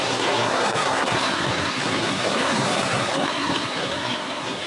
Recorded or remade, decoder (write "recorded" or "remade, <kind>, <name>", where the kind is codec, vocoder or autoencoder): remade, codec, SNAC